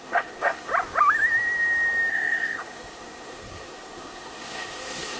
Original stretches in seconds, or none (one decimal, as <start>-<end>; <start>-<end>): 0.7-2.1